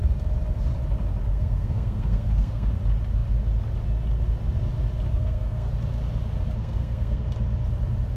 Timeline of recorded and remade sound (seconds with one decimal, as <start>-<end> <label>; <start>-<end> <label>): 0.0-1.3 recorded; 1.3-2.7 remade; 2.7-5.1 recorded; 5.1-5.7 remade; 5.7-6.6 recorded; 6.6-7.2 remade; 7.2-8.2 recorded